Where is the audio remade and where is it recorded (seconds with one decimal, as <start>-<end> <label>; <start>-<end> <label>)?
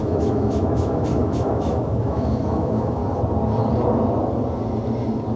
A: 0.0-3.0 remade; 3.0-5.4 recorded